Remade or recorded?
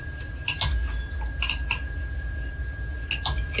recorded